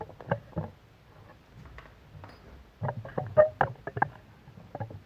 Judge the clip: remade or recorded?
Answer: recorded